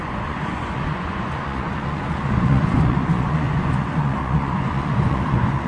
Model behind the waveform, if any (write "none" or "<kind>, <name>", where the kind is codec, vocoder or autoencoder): vocoder, Vocos